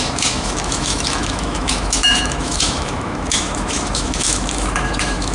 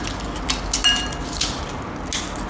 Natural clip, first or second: second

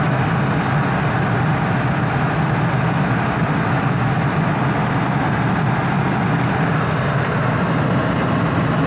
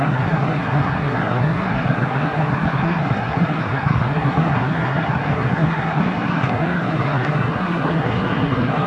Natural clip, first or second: first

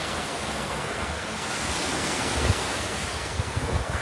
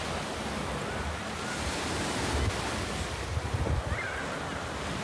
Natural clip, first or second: second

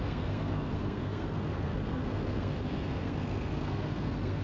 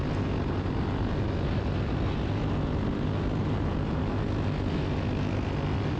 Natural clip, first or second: second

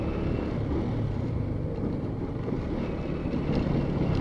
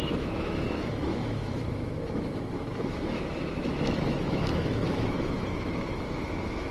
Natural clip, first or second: first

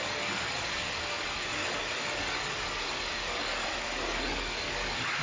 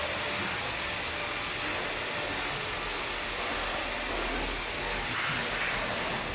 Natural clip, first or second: second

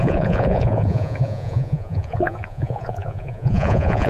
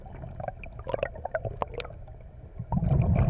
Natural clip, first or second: second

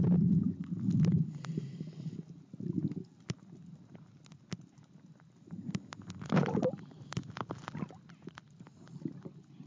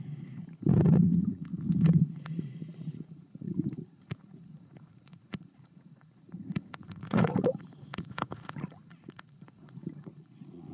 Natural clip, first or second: first